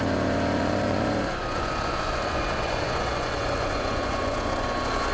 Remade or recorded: remade